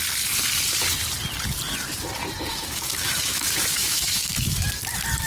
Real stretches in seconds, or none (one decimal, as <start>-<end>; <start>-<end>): 0.0-2.5; 4.7-5.3